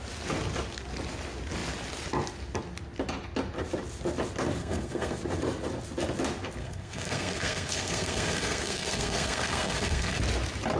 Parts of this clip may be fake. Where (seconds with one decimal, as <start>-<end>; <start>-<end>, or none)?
4.6-5.2; 6.6-10.2